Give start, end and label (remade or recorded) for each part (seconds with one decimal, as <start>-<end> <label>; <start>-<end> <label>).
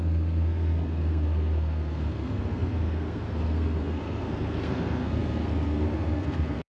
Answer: 0.0-6.7 remade